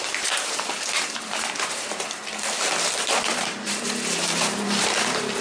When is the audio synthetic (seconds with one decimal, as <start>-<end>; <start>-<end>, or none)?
0.0-2.2; 3.3-5.4